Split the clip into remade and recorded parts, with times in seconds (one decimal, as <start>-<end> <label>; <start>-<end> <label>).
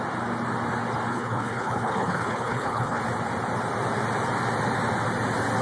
0.0-1.1 recorded; 1.1-3.0 remade; 3.0-5.6 recorded